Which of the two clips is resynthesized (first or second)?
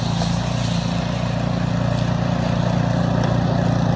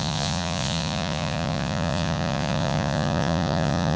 second